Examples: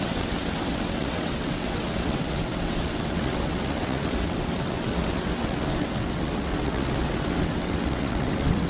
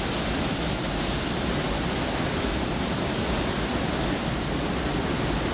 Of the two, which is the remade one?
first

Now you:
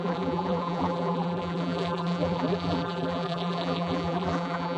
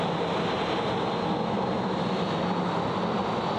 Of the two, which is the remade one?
first